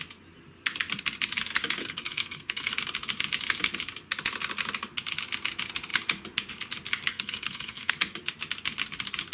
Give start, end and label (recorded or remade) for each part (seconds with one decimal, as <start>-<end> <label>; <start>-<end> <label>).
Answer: 0.0-1.8 recorded; 1.8-2.7 remade; 2.7-7.1 recorded; 7.1-7.9 remade; 7.9-9.3 recorded